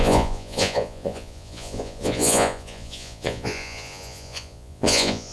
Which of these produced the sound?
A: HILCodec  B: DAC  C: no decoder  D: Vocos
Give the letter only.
D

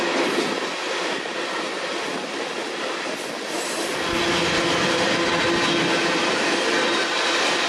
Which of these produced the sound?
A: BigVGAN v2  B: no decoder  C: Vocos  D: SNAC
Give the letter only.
B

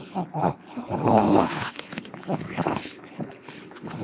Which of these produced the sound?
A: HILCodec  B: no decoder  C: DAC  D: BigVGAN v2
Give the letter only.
A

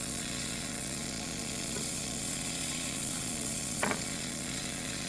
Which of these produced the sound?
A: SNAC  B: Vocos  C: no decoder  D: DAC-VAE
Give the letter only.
B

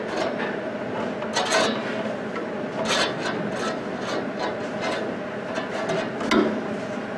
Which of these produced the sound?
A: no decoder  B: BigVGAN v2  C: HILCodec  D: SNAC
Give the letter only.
A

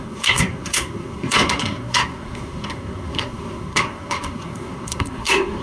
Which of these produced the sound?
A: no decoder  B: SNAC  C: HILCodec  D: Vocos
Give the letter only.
B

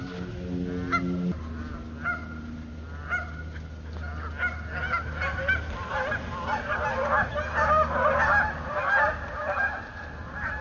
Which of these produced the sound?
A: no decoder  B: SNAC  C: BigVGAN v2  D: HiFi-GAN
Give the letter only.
A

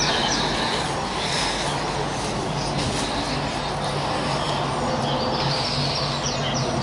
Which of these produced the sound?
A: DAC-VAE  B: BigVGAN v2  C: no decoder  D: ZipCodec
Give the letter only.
C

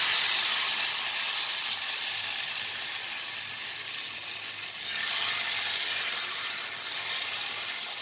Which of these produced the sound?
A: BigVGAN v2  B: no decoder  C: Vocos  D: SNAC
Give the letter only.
B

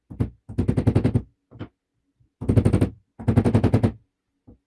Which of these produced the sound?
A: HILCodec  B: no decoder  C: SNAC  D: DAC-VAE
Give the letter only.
B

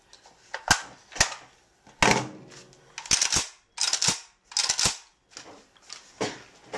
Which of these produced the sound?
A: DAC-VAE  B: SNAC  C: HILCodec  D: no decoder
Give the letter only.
D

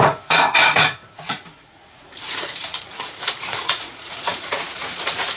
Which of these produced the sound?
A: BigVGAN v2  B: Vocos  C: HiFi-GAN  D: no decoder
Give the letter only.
B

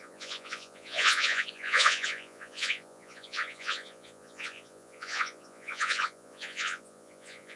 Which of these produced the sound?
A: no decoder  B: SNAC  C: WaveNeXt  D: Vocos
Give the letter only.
D